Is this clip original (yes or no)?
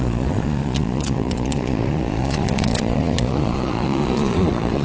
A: no